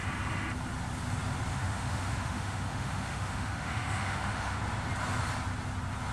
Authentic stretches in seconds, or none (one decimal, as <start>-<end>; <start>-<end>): 0.0-1.5; 4.6-6.1